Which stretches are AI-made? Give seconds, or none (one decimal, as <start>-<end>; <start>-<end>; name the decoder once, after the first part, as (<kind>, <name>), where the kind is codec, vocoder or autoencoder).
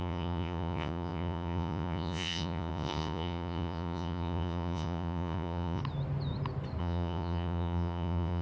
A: 0.0-5.8 (vocoder, Vocos); 6.8-8.4